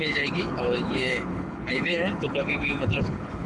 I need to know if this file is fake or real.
fake